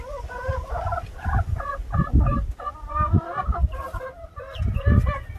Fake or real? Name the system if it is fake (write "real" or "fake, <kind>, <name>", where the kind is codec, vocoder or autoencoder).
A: real